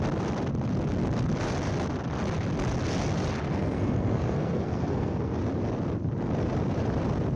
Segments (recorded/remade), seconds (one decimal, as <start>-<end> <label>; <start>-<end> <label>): 0.0-3.5 recorded; 3.5-5.4 remade; 5.4-7.4 recorded